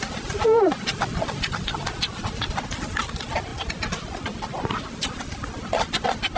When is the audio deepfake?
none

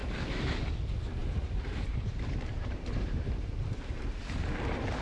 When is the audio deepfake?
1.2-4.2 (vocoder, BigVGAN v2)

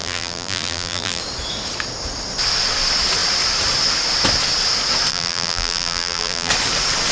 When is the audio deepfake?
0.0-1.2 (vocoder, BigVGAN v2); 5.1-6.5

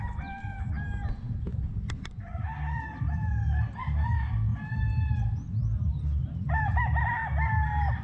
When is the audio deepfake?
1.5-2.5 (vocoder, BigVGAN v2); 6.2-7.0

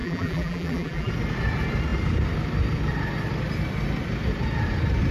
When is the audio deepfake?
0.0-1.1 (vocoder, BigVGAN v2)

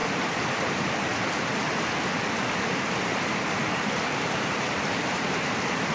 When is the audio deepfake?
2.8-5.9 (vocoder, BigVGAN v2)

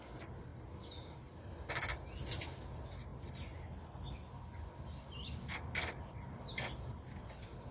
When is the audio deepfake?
none